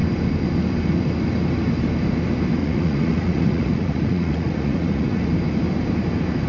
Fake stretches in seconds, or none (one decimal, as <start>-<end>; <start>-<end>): 2.6-5.2